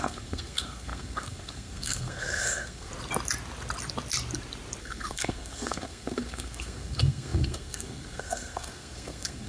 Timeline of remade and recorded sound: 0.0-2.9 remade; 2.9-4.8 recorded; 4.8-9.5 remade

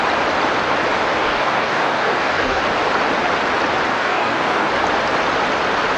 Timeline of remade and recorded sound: 0.0-1.1 recorded; 1.1-2.6 remade; 2.6-3.9 recorded; 3.9-4.7 remade; 4.7-6.0 recorded

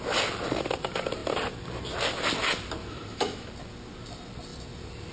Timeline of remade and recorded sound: 0.0-2.8 recorded; 2.8-3.5 remade; 3.5-5.1 recorded

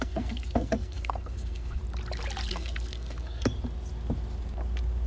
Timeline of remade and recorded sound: 0.0-1.8 remade; 1.8-2.5 recorded; 2.5-3.5 remade; 3.5-5.1 recorded

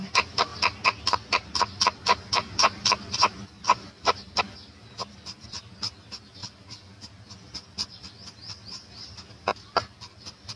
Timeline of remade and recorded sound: 0.0-6.4 recorded; 6.4-8.1 remade; 8.1-9.5 recorded; 9.5-10.6 remade

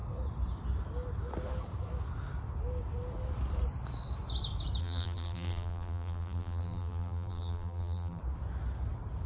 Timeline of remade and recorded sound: 0.0-4.8 recorded; 4.8-8.2 remade; 8.2-9.3 recorded